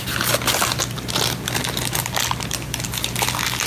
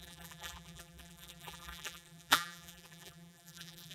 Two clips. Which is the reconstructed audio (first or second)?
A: second